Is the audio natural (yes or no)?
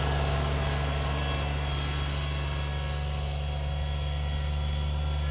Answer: yes